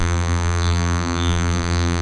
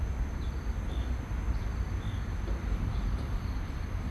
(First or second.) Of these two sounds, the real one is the second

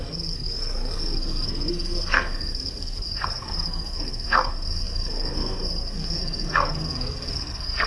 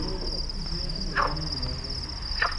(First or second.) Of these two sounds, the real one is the second